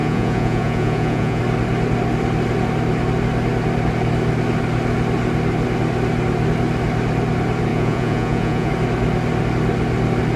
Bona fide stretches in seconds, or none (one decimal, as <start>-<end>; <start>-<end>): 1.4-7.7; 8.7-10.4